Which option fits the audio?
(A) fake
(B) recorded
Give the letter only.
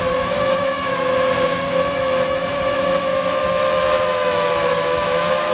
A